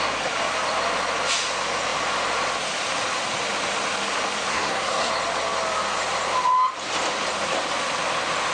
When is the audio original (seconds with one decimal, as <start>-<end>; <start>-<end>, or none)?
0.0-4.5; 5.1-8.5